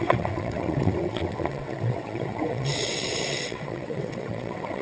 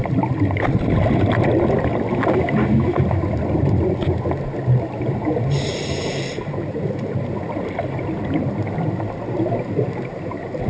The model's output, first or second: first